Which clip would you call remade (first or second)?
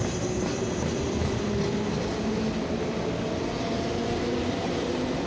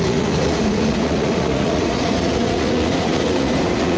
second